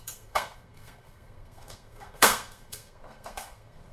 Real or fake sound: fake